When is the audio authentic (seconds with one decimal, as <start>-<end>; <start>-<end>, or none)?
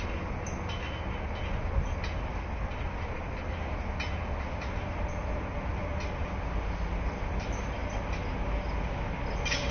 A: 0.0-7.8; 8.3-9.7